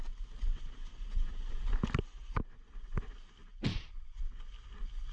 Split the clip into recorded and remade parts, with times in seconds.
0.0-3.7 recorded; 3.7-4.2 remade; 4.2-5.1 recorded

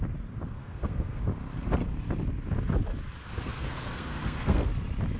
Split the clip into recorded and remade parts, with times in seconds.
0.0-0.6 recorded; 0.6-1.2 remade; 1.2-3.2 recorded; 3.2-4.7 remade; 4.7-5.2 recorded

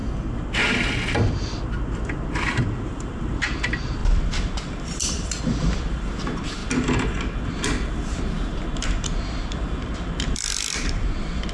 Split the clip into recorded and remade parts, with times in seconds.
0.0-2.3 recorded; 2.3-6.6 remade; 6.6-9.2 recorded; 9.2-11.5 remade

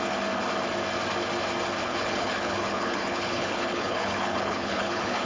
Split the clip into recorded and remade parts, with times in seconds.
0.0-1.8 recorded; 1.8-5.3 remade

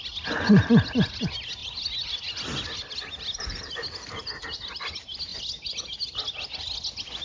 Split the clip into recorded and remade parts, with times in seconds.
0.0-7.2 recorded

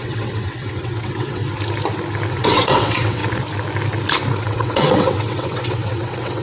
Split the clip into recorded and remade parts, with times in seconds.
0.0-1.4 remade; 1.4-2.3 recorded; 2.3-3.2 remade; 3.2-4.4 recorded; 4.4-6.4 remade